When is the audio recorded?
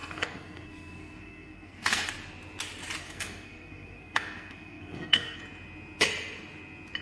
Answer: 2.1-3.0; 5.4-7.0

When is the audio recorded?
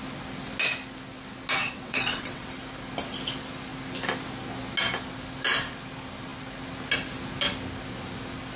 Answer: 0.0-1.6; 2.5-8.6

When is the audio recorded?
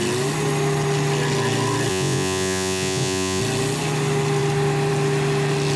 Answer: 0.0-1.9; 3.4-5.8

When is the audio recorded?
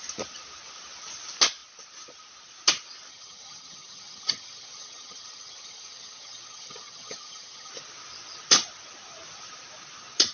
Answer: 0.0-3.1; 7.7-10.3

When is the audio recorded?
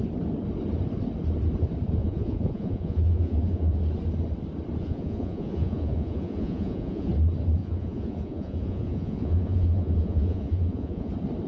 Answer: 0.0-2.0; 3.8-4.8; 7.1-7.6; 11.1-11.5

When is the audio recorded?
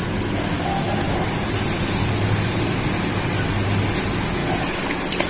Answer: 0.0-5.3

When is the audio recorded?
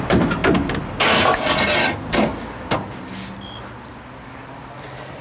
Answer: 0.0-5.2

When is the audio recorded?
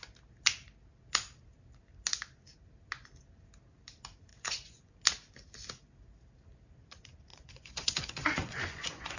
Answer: 0.0-4.3; 4.9-7.3